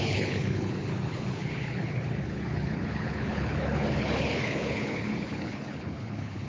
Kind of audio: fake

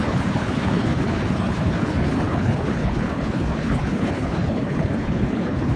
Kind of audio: fake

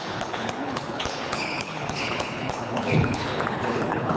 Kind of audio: fake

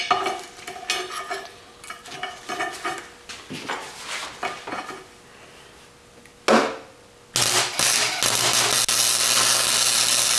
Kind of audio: real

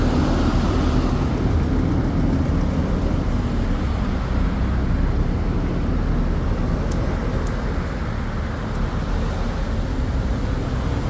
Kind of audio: real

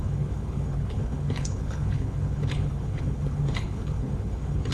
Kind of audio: fake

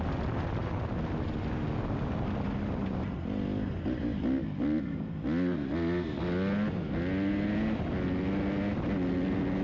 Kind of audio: real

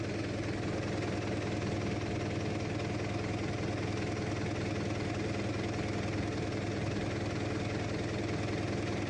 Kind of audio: real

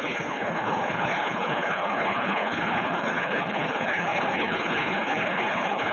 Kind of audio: fake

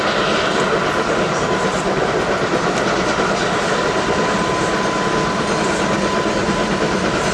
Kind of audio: real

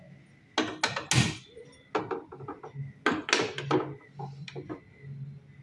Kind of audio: real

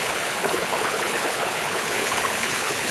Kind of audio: fake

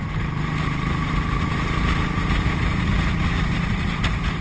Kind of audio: real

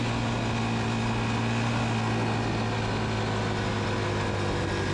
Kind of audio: real